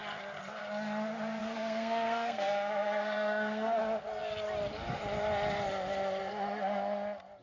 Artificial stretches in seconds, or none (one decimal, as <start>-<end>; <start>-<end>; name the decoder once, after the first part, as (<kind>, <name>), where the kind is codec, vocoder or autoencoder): 1.4-3.8 (codec, SNAC)